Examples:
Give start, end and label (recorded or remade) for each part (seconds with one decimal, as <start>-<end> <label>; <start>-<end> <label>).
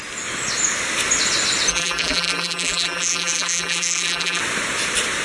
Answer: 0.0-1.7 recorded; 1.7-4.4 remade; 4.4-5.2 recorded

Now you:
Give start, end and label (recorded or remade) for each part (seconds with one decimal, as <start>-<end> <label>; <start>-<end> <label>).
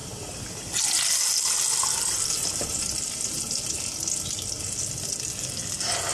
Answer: 0.0-6.1 recorded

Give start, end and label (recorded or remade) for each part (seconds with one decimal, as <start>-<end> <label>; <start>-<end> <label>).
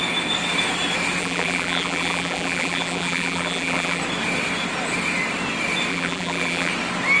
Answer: 0.0-1.2 recorded; 1.2-4.0 remade; 4.0-5.9 recorded; 5.9-6.7 remade; 6.7-7.2 recorded